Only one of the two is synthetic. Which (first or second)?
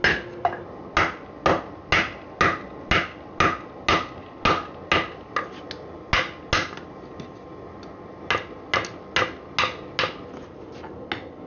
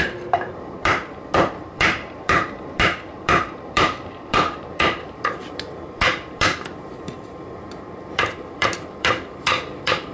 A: second